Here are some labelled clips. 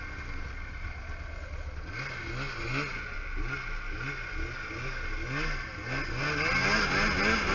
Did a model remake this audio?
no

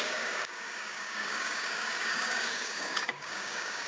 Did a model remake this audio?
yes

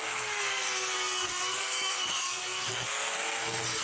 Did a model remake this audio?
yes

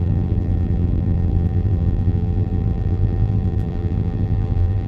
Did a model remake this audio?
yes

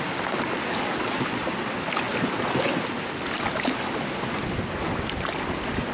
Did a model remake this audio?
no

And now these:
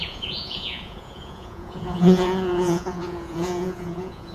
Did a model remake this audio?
yes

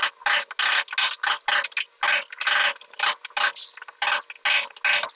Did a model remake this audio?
no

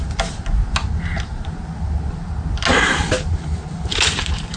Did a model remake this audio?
no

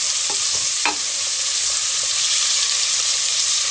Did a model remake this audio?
yes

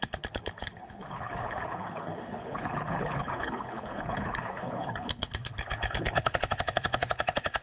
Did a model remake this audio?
yes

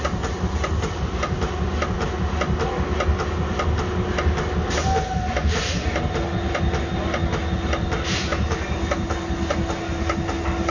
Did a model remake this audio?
no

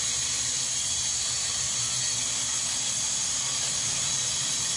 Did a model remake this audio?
yes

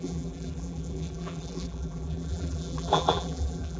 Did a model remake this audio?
yes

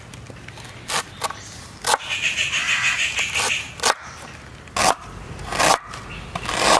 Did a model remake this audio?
no